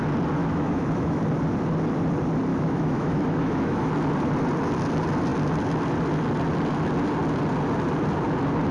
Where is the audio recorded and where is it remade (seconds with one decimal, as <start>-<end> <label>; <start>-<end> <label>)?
0.0-0.4 recorded; 0.4-1.2 remade; 1.2-2.5 recorded; 2.5-3.9 remade; 3.9-8.7 recorded